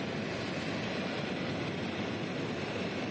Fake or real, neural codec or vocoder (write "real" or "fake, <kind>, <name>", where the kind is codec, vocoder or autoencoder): real